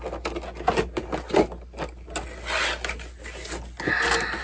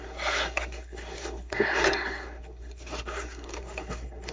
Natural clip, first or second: first